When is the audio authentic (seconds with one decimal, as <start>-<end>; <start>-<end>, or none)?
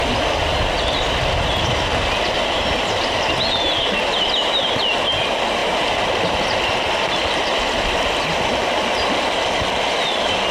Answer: 0.0-10.5